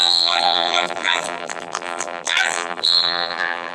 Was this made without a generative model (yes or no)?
no